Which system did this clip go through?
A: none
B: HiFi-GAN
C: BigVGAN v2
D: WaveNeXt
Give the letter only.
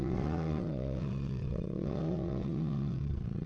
D